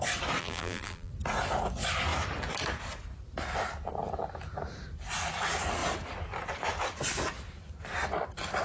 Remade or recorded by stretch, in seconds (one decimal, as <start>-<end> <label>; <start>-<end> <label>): 0.0-0.4 recorded; 0.4-1.1 remade; 1.1-8.6 recorded

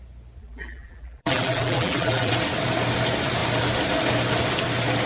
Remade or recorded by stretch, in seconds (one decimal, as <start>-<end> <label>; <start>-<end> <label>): 0.0-0.4 recorded; 0.4-2.3 remade; 2.3-5.1 recorded

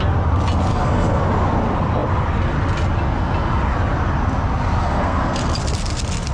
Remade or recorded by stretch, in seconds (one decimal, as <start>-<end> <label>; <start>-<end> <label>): 0.0-0.7 recorded; 0.7-1.2 remade; 1.2-4.8 recorded; 4.8-5.4 remade; 5.4-6.3 recorded